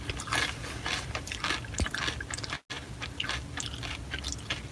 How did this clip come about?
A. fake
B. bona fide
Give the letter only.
B